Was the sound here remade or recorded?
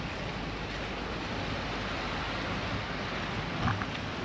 recorded